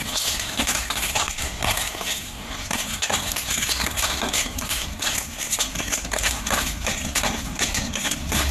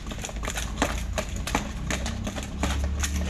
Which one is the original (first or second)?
second